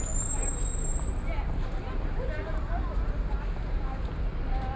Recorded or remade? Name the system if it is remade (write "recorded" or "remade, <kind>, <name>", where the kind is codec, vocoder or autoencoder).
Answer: recorded